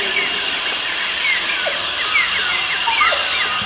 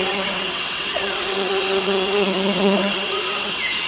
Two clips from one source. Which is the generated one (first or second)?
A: second